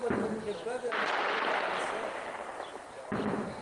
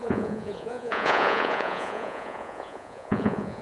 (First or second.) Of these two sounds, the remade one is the second